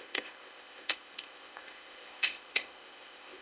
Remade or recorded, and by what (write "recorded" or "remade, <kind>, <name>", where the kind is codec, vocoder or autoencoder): remade, codec, ZipCodec